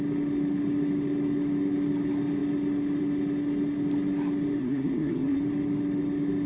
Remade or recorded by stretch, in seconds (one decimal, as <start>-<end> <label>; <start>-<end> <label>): 0.0-4.6 recorded; 4.6-5.4 remade; 5.4-6.5 recorded